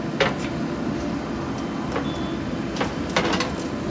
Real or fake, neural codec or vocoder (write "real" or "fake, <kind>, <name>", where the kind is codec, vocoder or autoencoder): real